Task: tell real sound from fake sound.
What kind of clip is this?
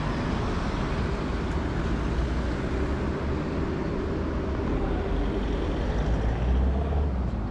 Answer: real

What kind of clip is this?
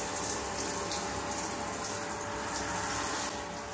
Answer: real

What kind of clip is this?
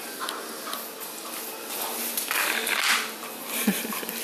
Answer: real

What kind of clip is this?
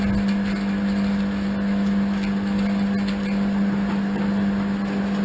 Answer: real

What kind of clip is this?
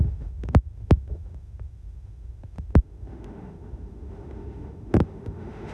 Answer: fake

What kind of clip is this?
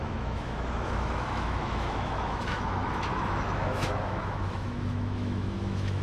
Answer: fake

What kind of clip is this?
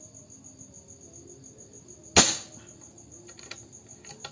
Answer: real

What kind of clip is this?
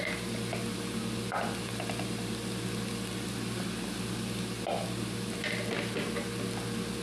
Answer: real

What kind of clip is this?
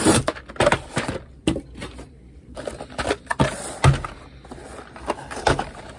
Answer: real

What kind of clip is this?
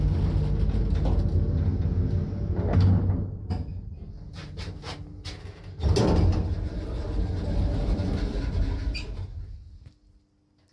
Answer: real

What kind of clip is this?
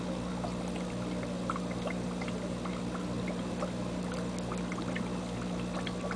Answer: real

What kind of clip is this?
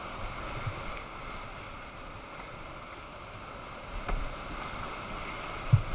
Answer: real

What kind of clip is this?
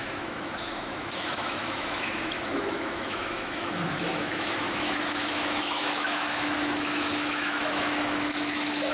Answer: fake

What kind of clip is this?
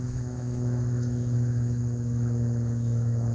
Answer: fake